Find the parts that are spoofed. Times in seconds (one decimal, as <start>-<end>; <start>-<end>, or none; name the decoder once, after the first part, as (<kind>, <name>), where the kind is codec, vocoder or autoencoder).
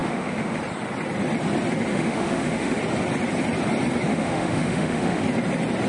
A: 0.0-0.6 (autoencoder, DAC-VAE); 1.9-2.8; 4.1-5.2